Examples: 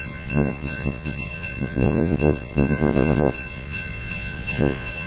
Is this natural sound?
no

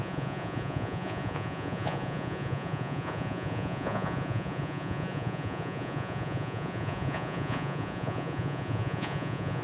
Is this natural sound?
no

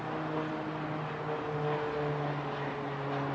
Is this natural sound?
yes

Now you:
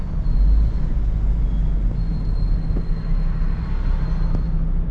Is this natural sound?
yes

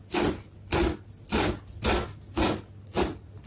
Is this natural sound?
yes